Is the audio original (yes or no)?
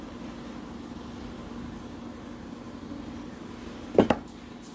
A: yes